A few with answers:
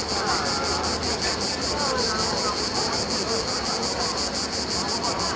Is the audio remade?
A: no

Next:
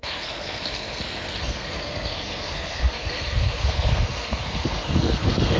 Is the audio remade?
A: yes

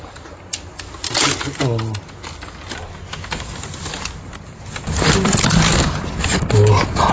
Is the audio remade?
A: no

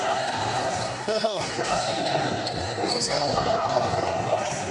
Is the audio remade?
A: yes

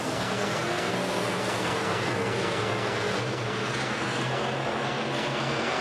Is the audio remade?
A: yes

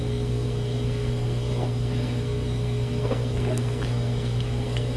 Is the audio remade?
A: yes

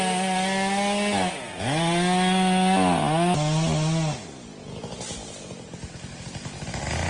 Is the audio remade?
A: no